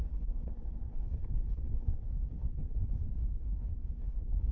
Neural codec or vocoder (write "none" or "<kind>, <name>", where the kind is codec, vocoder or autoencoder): codec, HILCodec